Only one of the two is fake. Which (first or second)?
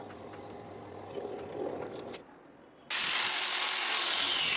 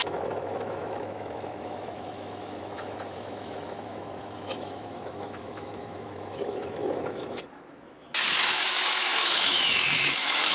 second